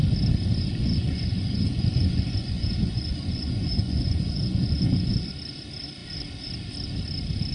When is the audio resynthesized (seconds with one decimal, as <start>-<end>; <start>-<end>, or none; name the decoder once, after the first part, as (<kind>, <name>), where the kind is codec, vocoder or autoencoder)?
0.8-5.3 (vocoder, Vocos)